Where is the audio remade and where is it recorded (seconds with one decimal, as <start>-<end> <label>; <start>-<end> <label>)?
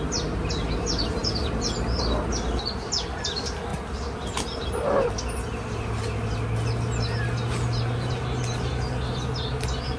0.0-10.0 recorded